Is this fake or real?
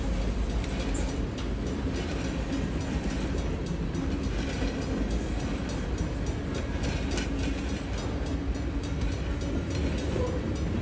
real